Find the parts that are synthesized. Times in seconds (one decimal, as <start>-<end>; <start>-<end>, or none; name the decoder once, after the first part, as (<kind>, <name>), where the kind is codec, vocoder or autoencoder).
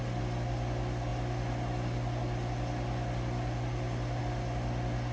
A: none